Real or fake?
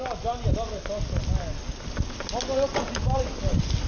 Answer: real